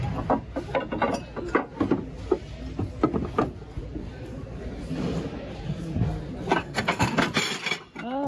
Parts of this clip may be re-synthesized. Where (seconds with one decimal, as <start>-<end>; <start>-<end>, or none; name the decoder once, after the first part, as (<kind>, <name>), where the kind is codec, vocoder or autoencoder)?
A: 6.6-7.2 (codec, SNAC)